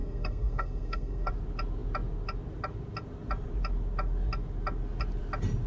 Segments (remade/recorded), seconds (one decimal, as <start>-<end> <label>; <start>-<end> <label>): 0.0-1.3 remade; 1.3-5.7 recorded